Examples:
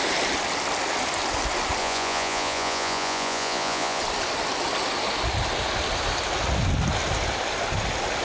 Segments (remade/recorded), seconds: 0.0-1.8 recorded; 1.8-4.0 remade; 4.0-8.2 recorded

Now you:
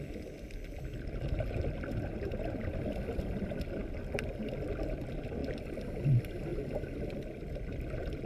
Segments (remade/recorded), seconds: 0.0-5.4 recorded; 5.4-6.0 remade; 6.0-8.3 recorded

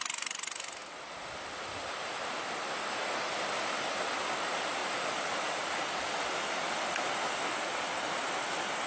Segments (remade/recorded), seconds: 0.0-4.8 recorded; 4.8-6.4 remade; 6.4-8.9 recorded

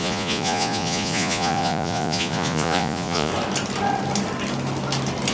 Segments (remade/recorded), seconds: 0.0-3.3 remade; 3.3-5.3 recorded